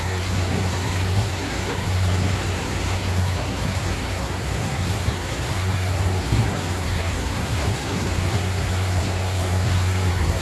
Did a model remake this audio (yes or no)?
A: yes